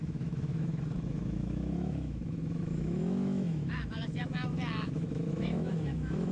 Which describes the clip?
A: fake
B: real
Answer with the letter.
A